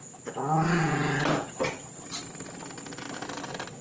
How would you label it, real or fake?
real